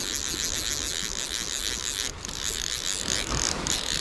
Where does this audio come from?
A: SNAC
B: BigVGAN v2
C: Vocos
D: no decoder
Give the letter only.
D